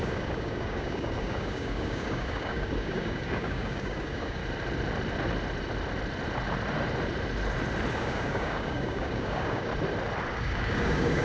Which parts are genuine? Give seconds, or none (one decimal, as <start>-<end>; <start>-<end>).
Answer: 4.4-7.9; 9.7-10.3